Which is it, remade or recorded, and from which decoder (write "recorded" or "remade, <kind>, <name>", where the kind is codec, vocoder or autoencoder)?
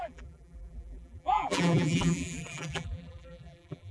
remade, vocoder, BigVGAN v2